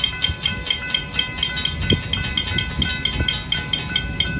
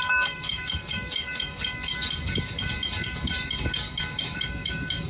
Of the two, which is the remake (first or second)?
second